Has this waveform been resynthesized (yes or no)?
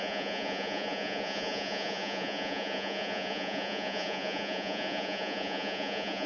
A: yes